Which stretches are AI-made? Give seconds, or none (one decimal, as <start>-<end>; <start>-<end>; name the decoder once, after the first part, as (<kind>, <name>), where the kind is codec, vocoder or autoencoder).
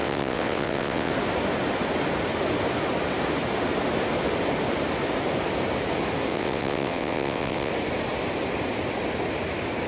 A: 0.0-1.1 (vocoder, WaveNeXt); 6.3-7.7